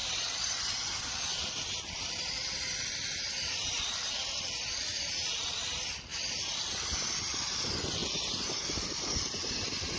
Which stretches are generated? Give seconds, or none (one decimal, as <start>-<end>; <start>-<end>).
0.0-5.0